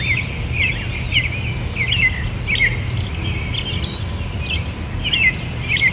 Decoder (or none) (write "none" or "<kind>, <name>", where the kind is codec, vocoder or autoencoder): none